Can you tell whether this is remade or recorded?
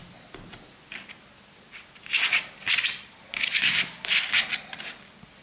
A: recorded